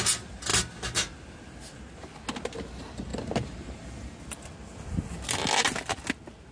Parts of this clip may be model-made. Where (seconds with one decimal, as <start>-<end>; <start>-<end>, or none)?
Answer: none